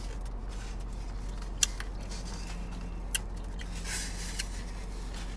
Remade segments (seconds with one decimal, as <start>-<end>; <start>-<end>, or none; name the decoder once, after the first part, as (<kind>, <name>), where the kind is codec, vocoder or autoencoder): none